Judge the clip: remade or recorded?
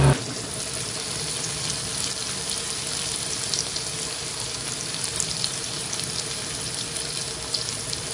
recorded